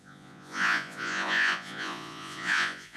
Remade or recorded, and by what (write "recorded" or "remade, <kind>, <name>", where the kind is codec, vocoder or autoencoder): remade, vocoder, Vocos